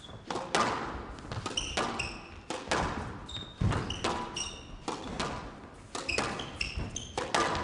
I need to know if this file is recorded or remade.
recorded